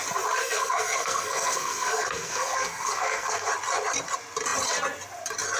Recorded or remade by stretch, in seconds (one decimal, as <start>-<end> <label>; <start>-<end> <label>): 0.0-0.4 recorded; 0.4-3.5 remade; 3.5-5.6 recorded